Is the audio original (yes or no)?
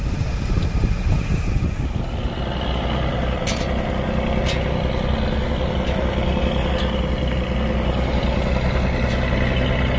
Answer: yes